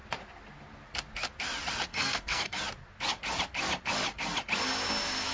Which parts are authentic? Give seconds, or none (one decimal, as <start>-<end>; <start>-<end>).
0.0-1.9; 2.6-5.3